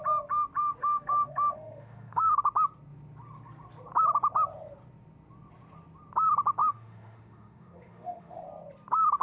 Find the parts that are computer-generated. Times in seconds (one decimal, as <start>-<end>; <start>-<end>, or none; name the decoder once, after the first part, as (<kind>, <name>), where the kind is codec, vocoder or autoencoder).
0.8-2.4 (autoencoder, DAC-VAE); 6.6-8.4